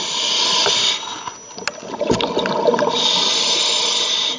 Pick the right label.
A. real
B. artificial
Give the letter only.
A